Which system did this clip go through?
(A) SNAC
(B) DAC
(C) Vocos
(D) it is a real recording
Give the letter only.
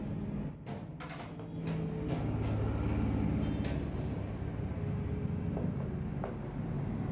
D